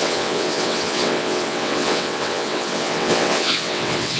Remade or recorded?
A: remade